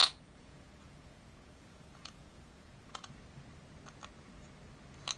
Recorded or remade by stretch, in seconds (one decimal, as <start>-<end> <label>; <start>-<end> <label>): 0.0-3.1 remade; 3.1-5.2 recorded